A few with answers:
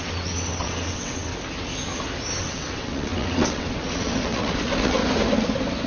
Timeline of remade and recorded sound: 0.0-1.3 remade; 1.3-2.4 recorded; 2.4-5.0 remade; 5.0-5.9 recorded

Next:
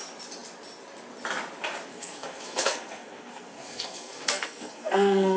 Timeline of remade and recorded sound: 0.0-1.9 recorded; 1.9-5.4 remade

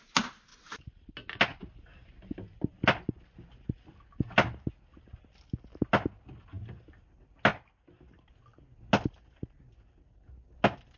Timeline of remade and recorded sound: 0.0-11.0 recorded

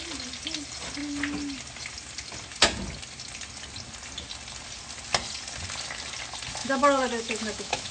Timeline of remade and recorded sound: 0.0-6.6 recorded; 6.6-7.9 remade

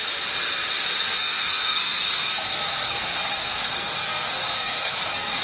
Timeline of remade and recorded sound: 0.0-1.0 recorded; 1.0-5.4 remade

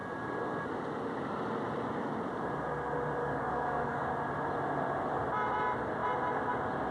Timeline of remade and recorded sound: 0.0-3.2 recorded; 3.2-4.1 remade; 4.1-6.9 recorded

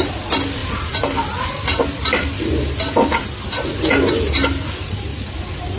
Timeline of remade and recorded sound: 0.0-5.8 recorded

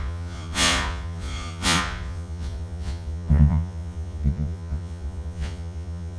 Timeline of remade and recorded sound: 0.0-6.2 remade